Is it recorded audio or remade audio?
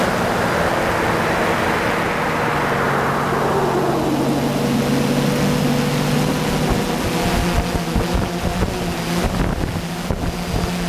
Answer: recorded